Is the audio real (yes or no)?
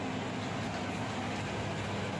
yes